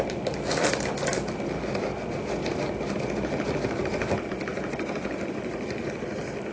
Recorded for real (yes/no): yes